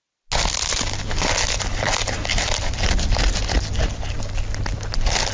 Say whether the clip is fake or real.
real